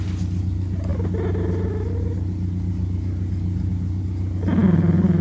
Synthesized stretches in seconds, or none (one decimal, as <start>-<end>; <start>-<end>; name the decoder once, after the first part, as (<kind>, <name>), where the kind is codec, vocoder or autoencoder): none